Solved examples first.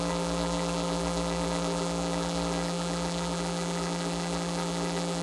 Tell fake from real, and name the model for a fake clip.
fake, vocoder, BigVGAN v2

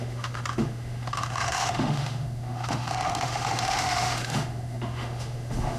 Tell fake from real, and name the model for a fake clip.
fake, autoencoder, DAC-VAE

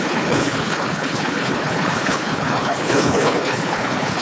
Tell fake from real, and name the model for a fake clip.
fake, codec, HILCodec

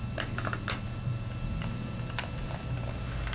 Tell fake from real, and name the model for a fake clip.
real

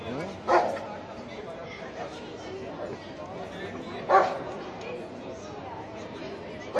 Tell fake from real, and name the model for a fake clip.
real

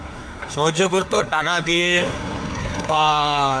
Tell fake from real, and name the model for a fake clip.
fake, codec, SNAC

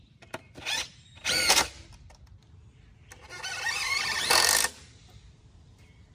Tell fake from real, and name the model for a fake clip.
real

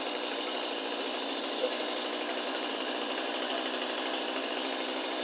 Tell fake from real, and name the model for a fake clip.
real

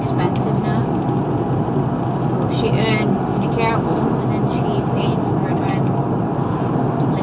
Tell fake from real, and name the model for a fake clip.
real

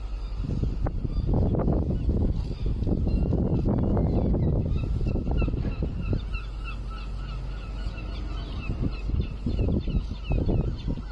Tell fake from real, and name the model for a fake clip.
real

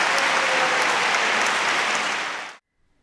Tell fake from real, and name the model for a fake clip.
real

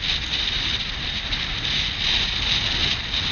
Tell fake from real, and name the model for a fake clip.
real